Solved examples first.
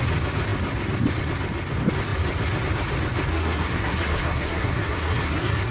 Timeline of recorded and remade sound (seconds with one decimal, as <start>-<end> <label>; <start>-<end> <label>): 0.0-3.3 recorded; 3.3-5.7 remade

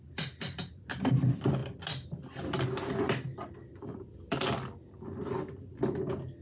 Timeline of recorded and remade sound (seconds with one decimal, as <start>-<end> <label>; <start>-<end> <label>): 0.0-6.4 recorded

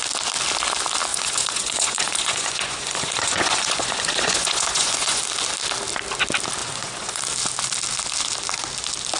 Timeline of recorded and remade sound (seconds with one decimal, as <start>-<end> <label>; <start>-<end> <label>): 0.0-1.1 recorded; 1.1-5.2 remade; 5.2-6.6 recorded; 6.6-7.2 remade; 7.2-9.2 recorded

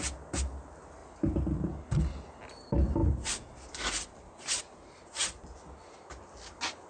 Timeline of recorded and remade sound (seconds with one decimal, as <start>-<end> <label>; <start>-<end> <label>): 0.0-6.9 recorded